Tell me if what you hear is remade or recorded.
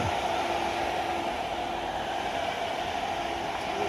recorded